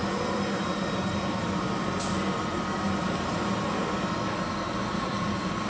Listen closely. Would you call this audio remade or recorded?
recorded